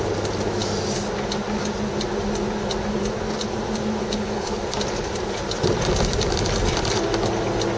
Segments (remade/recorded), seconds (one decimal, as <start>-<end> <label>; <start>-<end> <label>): 0.0-4.0 recorded; 4.0-4.6 remade; 4.6-7.8 recorded